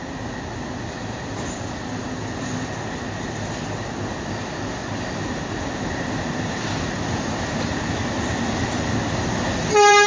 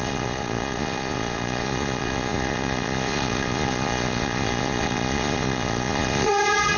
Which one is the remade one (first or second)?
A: second